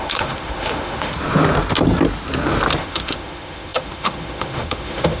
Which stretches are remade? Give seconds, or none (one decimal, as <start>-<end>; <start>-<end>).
0.0-1.1; 2.8-5.2